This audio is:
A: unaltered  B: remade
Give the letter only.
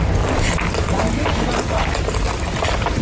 A